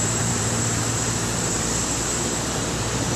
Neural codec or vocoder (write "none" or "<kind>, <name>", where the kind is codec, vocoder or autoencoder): vocoder, BigVGAN v2